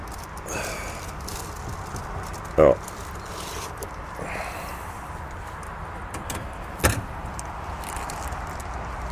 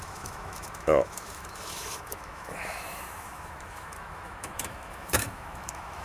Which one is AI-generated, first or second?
second